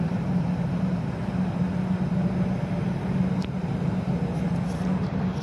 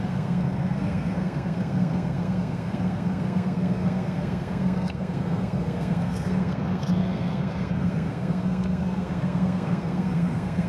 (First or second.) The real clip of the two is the first